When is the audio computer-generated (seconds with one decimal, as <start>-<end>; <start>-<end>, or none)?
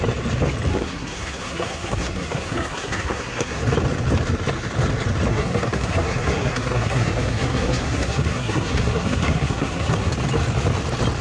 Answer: 0.7-3.6; 5.3-10.1